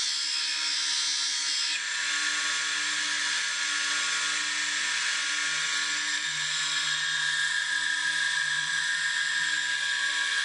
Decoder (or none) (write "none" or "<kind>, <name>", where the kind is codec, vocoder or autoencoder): none